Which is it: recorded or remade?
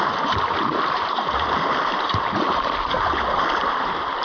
remade